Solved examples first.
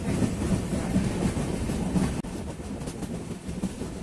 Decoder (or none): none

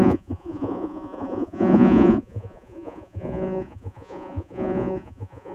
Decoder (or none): vocoder, Vocos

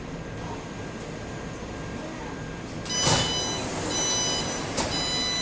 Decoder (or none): none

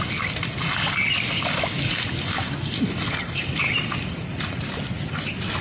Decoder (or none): none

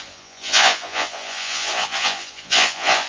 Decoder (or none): vocoder, Vocos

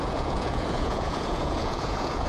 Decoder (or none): vocoder, Vocos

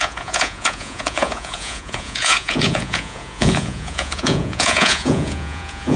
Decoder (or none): vocoder, Vocos